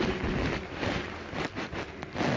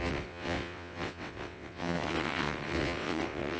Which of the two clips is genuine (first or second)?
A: first